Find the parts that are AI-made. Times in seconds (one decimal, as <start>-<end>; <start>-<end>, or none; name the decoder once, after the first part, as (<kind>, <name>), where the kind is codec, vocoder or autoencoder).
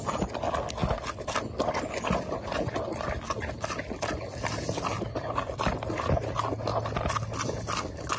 none